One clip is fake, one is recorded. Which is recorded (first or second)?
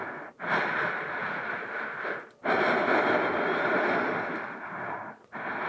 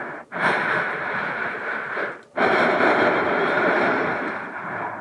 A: first